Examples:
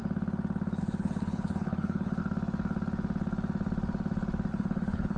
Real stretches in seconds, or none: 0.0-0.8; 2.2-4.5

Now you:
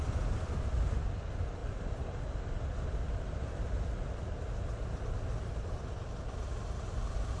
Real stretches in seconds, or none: 0.0-7.4

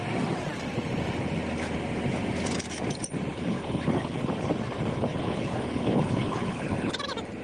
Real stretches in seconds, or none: 0.0-3.3; 4.2-4.9; 6.9-7.4

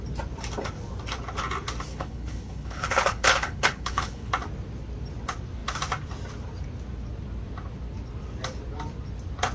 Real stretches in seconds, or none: 0.0-1.9; 4.3-9.5

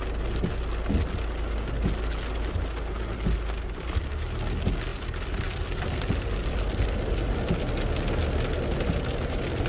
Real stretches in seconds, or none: 0.0-9.7